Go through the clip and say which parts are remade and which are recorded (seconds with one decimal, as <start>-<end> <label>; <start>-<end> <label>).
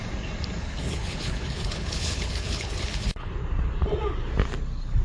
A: 0.0-0.6 recorded; 0.6-3.3 remade; 3.3-5.0 recorded